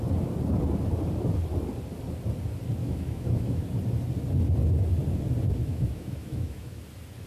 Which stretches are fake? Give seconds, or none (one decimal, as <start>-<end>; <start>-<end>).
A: 2.8-3.6; 5.6-6.8